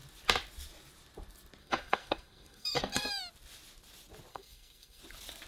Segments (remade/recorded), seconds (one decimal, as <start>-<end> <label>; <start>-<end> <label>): 0.0-1.6 recorded; 1.6-3.2 remade; 3.2-4.3 recorded; 4.3-5.0 remade; 5.0-5.5 recorded